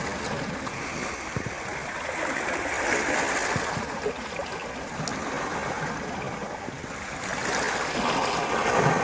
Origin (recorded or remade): recorded